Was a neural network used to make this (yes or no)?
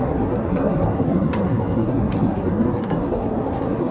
yes